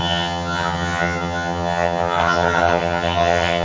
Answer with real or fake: fake